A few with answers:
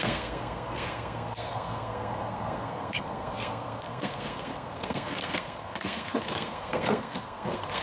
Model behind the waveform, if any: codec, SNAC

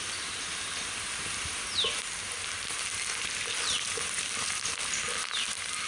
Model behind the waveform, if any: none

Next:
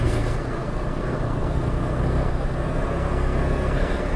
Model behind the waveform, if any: codec, SNAC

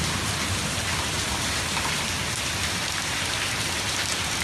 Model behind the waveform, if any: none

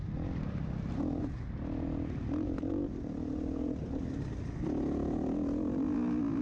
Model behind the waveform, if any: none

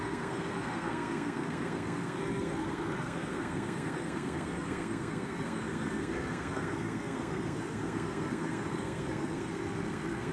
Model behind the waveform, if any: codec, SNAC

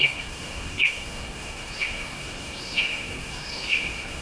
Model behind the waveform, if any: codec, SNAC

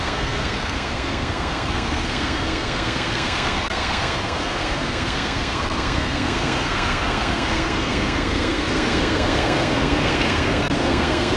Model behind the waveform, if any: codec, SNAC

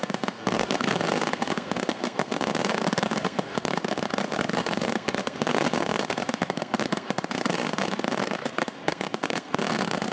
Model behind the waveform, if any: codec, SNAC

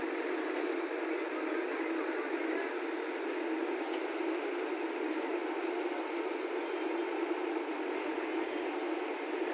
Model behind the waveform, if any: none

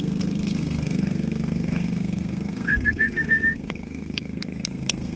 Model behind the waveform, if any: codec, SNAC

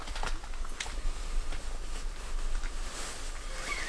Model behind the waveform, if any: none